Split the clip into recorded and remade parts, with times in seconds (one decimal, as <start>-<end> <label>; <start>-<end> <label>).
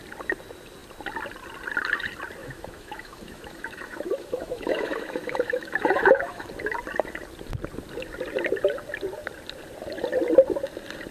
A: 0.0-2.4 recorded; 2.4-6.5 remade; 6.5-11.1 recorded